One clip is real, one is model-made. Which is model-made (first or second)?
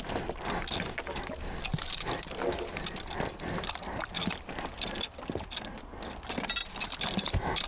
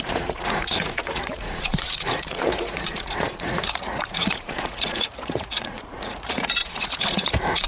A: second